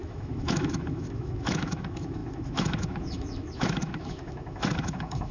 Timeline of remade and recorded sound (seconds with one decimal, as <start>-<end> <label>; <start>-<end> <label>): 0.0-5.3 remade